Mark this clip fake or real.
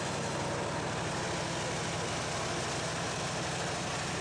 real